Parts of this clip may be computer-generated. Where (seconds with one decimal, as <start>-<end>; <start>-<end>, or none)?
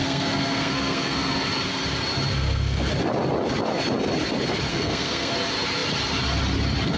0.0-1.5; 2.3-2.9; 4.7-5.3